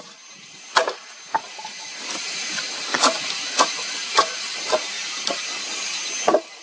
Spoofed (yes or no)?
no